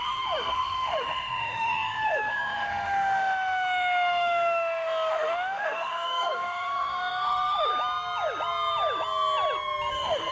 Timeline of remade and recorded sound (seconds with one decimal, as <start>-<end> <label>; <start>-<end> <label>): 0.0-7.7 remade; 7.7-9.9 recorded; 9.9-10.3 remade